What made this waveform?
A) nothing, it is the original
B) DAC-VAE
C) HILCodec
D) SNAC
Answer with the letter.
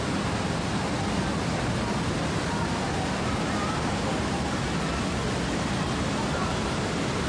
A